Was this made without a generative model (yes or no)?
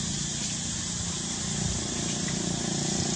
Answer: yes